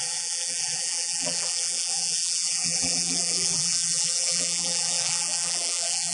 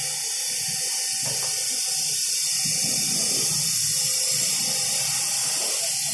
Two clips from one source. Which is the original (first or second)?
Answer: second